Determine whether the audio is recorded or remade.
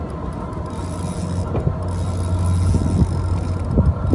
recorded